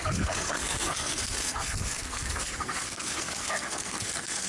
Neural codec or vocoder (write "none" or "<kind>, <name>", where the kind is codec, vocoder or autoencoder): codec, SNAC